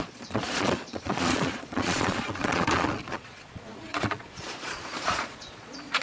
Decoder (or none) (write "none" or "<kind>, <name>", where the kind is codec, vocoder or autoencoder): vocoder, Vocos